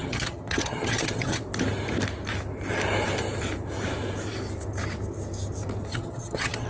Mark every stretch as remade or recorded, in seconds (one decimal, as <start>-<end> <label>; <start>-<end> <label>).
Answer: 0.0-1.4 remade; 1.4-5.9 recorded; 5.9-6.7 remade